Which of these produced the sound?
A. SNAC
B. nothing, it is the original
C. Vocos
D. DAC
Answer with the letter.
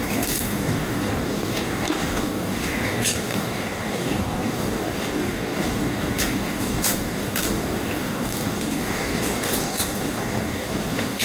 D